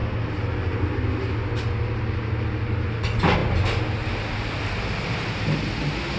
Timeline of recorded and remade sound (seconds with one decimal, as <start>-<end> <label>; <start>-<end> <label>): 0.0-6.2 recorded